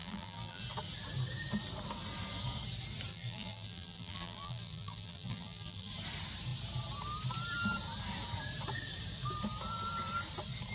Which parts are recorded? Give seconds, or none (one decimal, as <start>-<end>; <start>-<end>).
0.6-3.1; 5.9-10.7